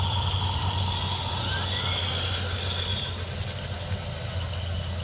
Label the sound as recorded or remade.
recorded